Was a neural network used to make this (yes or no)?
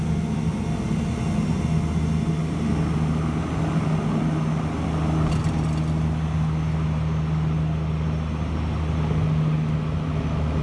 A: no